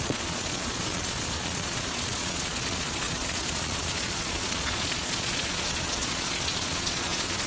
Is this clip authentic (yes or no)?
no